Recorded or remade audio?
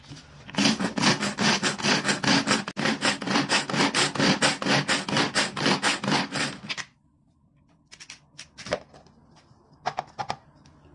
recorded